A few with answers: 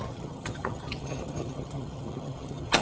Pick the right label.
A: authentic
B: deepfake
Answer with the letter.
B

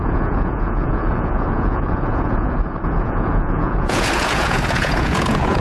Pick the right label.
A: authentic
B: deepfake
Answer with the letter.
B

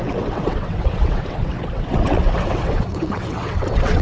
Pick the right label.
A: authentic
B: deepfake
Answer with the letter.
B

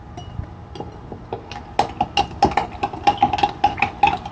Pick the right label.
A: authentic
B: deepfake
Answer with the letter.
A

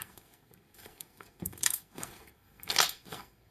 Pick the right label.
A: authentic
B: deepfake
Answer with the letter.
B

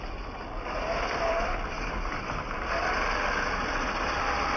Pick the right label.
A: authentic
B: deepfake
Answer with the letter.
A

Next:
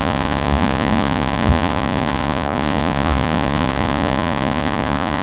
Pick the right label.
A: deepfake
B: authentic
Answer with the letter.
A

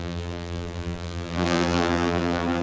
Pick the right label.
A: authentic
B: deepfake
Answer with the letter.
B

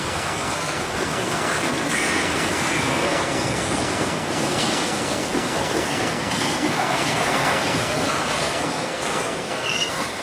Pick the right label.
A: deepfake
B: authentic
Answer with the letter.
A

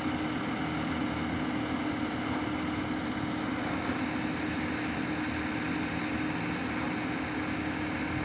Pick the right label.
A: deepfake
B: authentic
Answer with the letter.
B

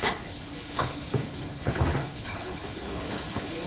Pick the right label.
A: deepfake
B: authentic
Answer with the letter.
A